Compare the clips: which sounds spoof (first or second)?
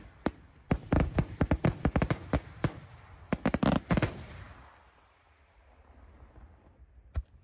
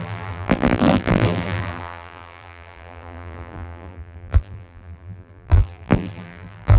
second